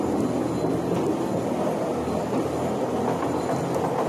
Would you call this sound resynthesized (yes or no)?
no